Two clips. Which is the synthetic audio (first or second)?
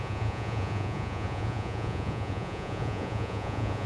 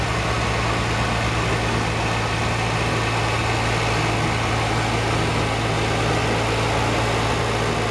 first